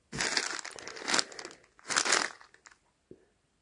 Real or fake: real